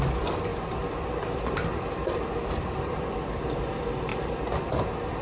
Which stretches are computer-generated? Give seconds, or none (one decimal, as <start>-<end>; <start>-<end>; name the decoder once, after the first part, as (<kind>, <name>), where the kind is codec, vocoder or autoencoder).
0.5-3.6 (vocoder, BigVGAN v2); 4.1-4.7